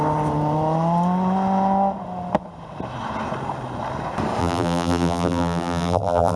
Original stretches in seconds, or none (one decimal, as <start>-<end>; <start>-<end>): 0.0-4.4

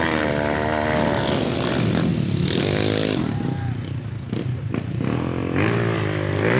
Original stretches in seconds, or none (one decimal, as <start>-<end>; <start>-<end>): 0.0-2.1; 2.6-5.4